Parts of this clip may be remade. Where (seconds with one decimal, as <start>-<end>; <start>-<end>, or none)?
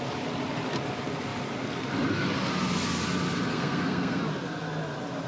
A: 3.5-4.2